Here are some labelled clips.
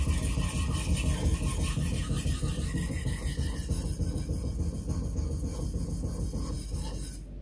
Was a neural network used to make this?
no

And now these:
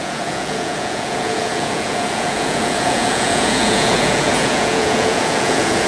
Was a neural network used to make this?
yes